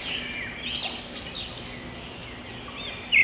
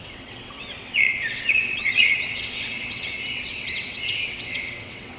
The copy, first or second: second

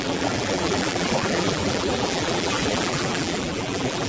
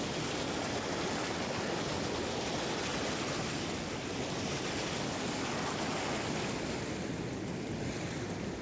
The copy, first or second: first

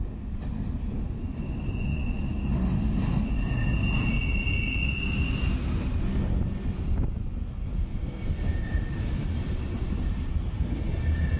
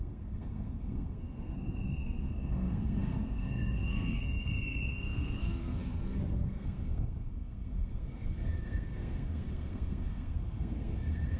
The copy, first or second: second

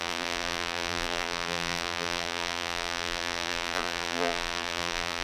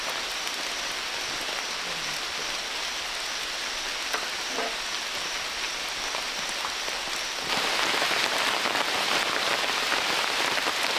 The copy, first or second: first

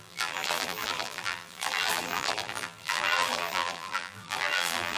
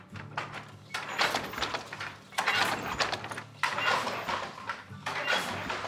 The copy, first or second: first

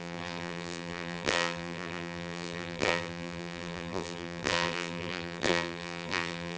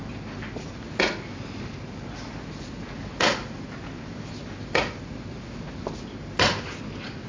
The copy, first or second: first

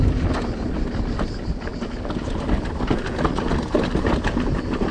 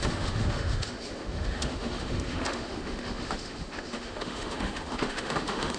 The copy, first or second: second